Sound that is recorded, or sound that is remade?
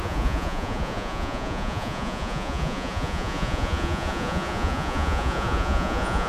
remade